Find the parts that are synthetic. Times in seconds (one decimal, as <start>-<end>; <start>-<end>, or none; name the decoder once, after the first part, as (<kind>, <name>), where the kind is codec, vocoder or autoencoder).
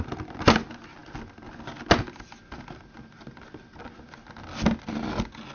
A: none